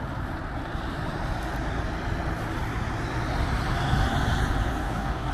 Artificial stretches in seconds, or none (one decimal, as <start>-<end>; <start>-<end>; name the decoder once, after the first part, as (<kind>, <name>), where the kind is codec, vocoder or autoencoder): 4.8-5.3 (codec, DAC)